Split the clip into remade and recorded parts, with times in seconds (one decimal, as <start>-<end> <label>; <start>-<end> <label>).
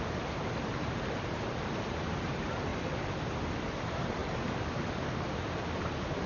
0.0-2.7 remade; 2.7-3.7 recorded; 3.7-6.3 remade